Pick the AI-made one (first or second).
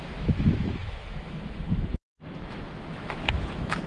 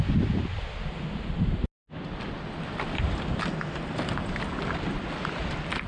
first